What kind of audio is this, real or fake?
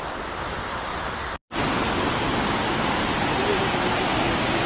real